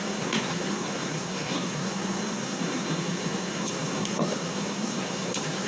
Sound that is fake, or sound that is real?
fake